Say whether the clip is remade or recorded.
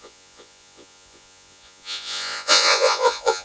remade